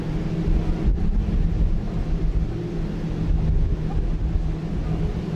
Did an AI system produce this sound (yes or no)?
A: no